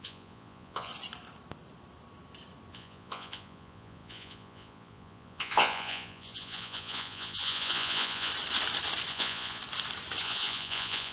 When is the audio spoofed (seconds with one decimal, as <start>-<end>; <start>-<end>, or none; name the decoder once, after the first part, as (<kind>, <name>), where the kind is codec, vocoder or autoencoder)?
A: 0.0-0.9 (vocoder, Vocos); 2.7-8.3; 9.1-9.6; 10.2-11.1